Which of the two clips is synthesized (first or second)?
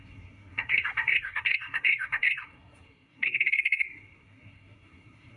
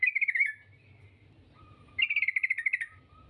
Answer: first